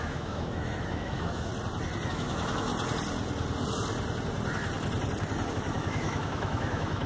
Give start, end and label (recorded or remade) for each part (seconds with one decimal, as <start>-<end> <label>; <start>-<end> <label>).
0.0-1.5 remade; 1.5-2.1 recorded; 2.1-2.7 remade; 2.7-5.5 recorded; 5.5-7.1 remade